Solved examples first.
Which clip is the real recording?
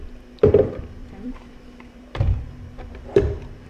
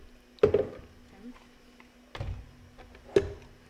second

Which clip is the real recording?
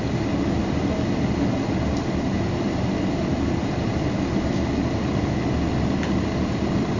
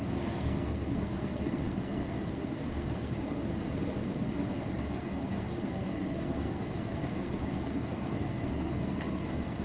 first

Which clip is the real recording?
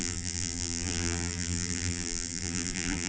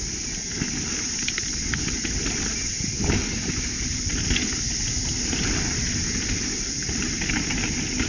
second